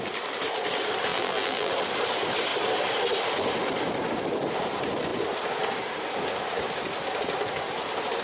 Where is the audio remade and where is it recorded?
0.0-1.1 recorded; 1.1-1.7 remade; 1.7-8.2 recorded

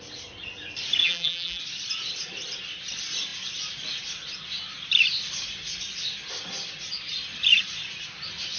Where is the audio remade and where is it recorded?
0.0-1.0 recorded; 1.0-1.6 remade; 1.6-8.6 recorded

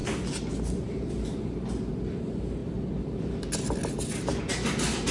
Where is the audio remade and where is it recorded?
0.0-5.1 recorded